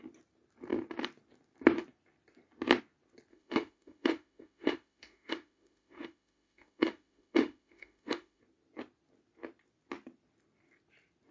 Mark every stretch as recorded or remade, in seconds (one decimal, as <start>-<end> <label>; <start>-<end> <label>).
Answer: 0.0-3.3 recorded; 3.3-8.4 remade; 8.4-11.3 recorded